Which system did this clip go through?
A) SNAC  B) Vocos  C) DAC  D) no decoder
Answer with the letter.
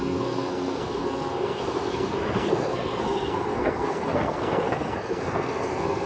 A